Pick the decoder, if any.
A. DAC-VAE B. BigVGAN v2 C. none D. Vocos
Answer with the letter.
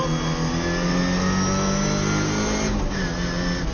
C